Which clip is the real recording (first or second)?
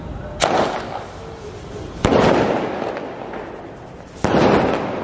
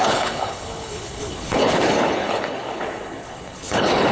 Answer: first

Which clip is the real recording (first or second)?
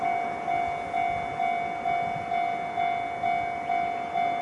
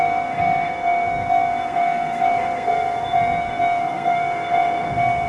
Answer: first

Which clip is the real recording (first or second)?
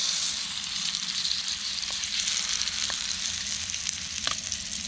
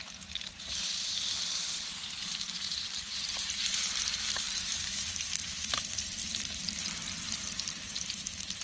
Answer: first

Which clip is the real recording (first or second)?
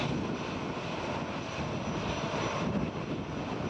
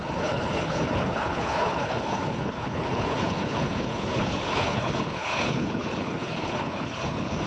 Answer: first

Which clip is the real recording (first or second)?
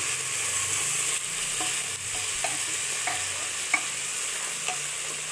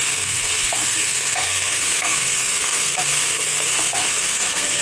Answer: first